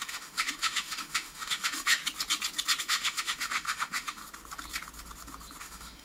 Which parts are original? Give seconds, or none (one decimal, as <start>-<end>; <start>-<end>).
2.0-2.8; 4.2-5.6